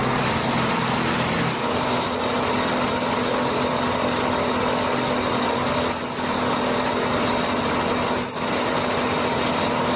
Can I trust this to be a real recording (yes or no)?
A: yes